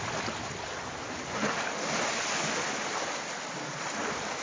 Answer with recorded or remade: recorded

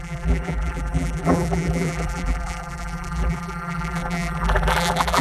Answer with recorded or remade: remade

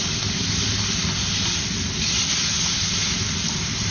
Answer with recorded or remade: recorded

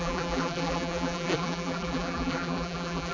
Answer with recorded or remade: remade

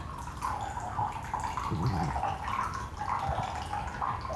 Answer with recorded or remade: recorded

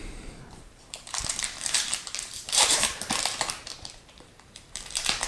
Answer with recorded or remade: remade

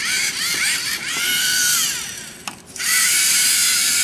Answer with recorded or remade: remade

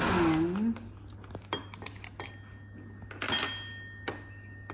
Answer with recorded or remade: recorded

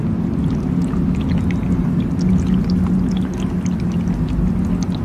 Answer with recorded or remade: recorded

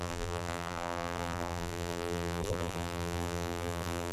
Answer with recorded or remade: remade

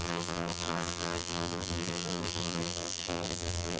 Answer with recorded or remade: remade